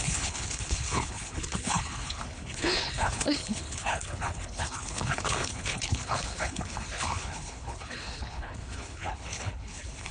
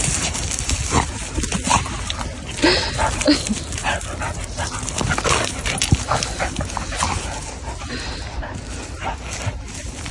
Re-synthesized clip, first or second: first